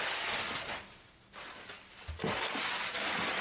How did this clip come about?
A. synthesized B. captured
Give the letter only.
B